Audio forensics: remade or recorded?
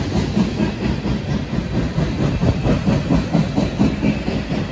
recorded